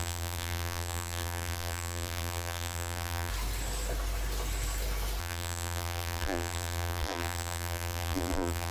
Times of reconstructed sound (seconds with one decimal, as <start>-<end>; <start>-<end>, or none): 0.0-3.3; 5.2-8.7